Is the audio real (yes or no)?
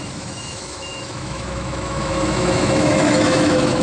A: no